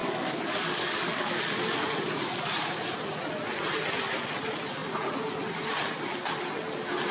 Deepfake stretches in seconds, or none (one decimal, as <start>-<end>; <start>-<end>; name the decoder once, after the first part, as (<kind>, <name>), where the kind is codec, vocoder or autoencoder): 0.0-1.4 (codec, DAC)